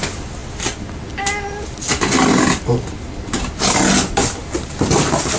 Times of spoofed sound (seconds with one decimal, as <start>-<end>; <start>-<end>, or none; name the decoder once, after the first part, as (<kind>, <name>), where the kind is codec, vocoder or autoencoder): none